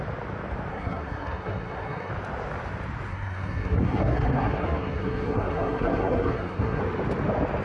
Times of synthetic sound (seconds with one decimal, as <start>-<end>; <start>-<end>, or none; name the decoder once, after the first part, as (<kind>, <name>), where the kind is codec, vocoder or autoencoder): 0.7-2.1 (codec, SNAC); 3.1-6.8